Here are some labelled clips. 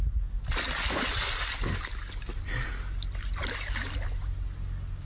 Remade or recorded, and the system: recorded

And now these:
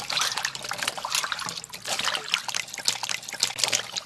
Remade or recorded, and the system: recorded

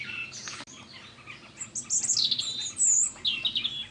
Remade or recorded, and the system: recorded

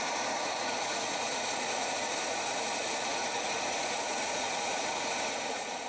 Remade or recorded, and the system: remade, vocoder, Vocos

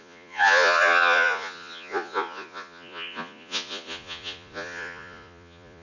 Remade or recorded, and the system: remade, vocoder, Vocos